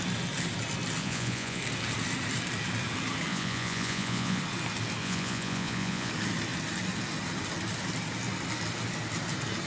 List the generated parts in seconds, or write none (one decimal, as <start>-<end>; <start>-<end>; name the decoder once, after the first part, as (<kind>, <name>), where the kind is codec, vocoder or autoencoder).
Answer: 1.0-1.6 (vocoder, Vocos); 3.3-4.4; 5.0-6.1